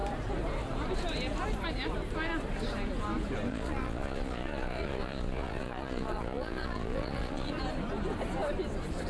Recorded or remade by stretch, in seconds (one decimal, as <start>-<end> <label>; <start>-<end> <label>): 0.0-3.5 recorded; 3.5-7.5 remade; 7.5-9.1 recorded